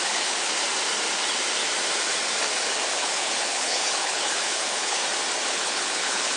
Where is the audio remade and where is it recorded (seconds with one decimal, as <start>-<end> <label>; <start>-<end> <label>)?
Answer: 0.0-0.5 remade; 0.5-2.9 recorded; 2.9-5.0 remade; 5.0-5.5 recorded; 5.5-6.4 remade